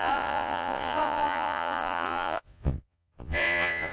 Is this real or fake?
fake